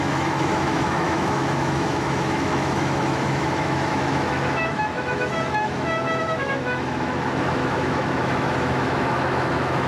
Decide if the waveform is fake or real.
fake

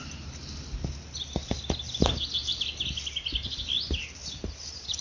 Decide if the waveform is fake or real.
real